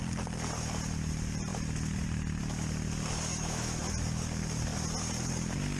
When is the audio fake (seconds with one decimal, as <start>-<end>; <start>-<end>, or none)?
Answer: 3.3-3.8